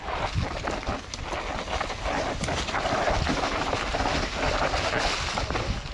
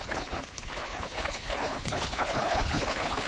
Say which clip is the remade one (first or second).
second